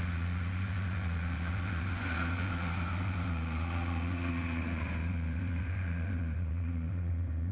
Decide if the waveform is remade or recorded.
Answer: remade